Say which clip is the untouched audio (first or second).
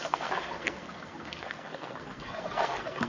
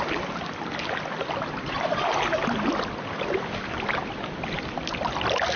second